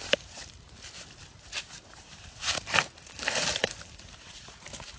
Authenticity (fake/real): fake